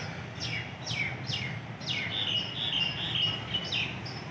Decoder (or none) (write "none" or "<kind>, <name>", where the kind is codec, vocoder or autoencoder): none